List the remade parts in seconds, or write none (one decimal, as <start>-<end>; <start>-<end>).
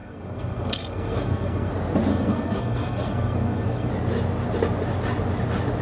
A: 0.0-1.7; 2.1-3.9